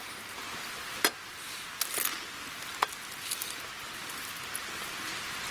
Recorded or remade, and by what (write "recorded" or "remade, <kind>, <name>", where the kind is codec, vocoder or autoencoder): recorded